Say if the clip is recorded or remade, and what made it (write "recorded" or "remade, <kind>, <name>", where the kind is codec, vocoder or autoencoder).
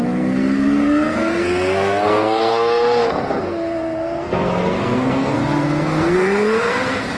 remade, codec, SNAC